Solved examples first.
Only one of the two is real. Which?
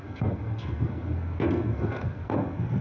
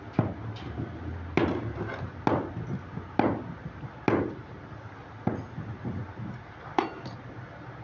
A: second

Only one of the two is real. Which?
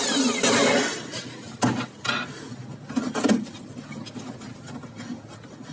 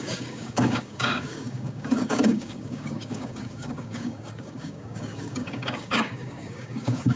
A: first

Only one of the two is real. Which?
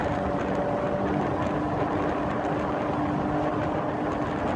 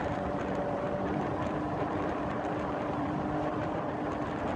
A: first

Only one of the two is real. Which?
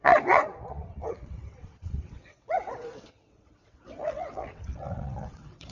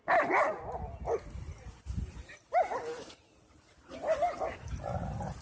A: second